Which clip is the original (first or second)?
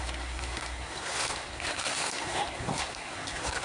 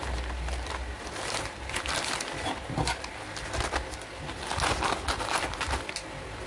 second